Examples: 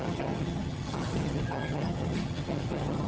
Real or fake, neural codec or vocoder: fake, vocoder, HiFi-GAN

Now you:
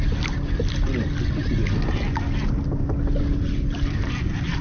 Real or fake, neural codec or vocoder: real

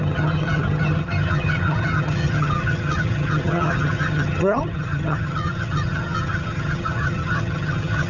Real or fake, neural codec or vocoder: fake, vocoder, HiFi-GAN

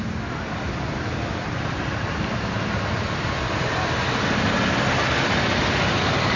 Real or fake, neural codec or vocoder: real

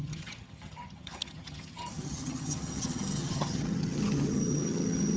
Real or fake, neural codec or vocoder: fake, vocoder, HiFi-GAN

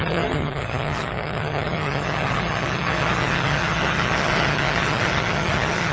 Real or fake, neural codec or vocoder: fake, vocoder, HiFi-GAN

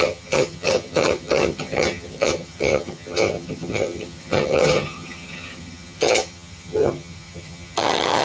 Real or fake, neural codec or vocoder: fake, vocoder, HiFi-GAN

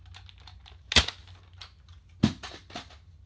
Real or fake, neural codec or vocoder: real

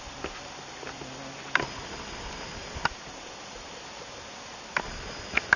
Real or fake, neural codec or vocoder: real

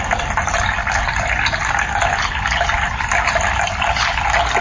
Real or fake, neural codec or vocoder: real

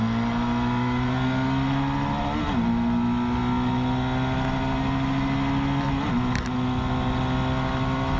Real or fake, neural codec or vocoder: real